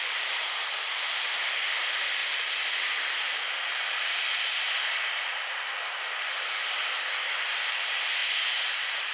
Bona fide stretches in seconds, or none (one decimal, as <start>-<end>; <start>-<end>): 2.2-6.0; 8.2-8.7